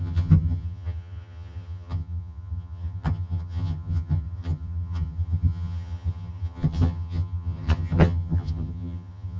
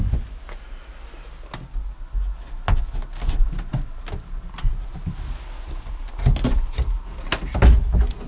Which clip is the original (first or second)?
second